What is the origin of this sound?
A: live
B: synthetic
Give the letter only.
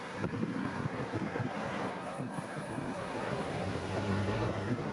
B